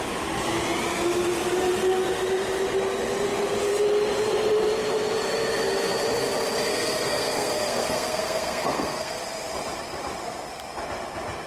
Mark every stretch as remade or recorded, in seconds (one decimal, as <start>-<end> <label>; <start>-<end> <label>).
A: 0.0-6.7 recorded; 6.7-9.2 remade; 9.2-11.5 recorded